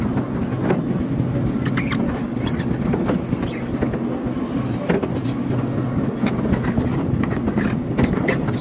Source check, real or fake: real